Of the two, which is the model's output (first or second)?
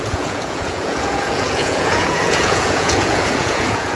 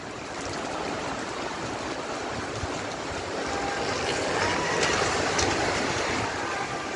first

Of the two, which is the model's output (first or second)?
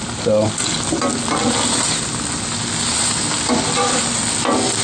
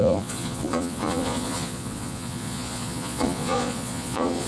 second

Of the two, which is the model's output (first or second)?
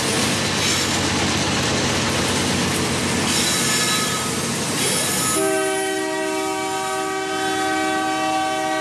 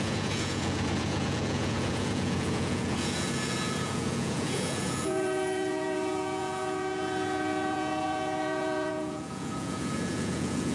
second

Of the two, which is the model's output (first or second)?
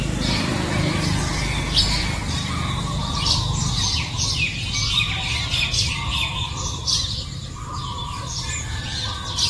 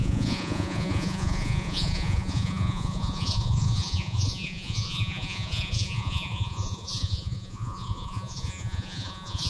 second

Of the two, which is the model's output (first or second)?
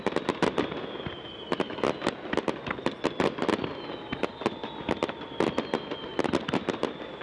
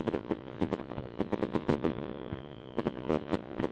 second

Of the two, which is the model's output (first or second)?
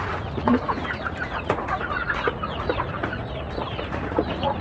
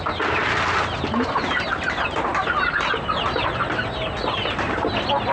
first